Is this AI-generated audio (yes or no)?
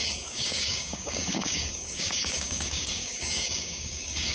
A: yes